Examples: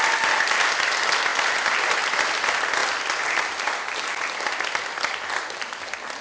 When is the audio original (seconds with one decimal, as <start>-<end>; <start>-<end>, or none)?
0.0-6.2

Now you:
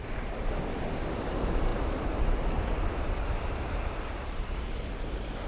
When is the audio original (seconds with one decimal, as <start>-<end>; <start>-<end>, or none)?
0.0-5.5

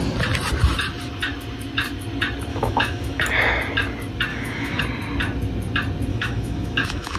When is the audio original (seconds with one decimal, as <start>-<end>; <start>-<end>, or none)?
0.0-2.5; 3.2-4.3; 4.8-6.1